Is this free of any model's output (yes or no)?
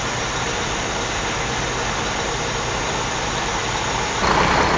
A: yes